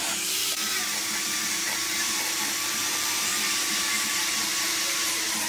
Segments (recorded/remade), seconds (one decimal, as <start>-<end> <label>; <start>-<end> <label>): 0.0-5.5 remade

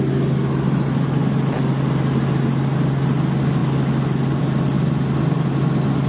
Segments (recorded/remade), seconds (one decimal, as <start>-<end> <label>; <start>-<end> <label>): 0.0-6.1 recorded

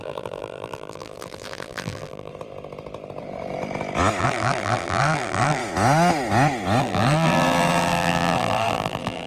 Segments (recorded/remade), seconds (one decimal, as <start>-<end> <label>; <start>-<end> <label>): 0.0-2.3 remade; 2.3-4.2 recorded; 4.2-5.6 remade; 5.6-6.8 recorded; 6.8-9.3 remade